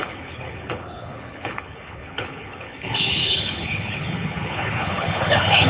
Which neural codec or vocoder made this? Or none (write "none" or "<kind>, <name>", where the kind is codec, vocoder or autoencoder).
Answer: codec, HILCodec